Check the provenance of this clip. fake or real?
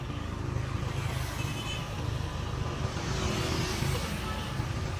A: real